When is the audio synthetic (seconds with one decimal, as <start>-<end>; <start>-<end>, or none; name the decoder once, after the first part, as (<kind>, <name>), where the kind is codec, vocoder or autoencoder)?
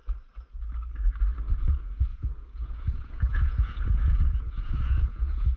1.5-5.6 (vocoder, Vocos)